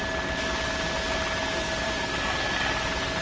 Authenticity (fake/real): real